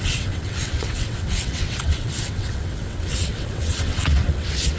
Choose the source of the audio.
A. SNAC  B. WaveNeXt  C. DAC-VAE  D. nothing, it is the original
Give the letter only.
B